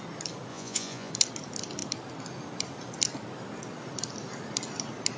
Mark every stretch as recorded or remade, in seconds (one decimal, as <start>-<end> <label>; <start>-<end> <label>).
0.0-0.5 recorded; 0.5-1.1 remade; 1.1-5.2 recorded